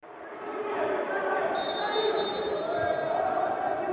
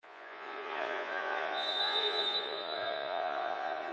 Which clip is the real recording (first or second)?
first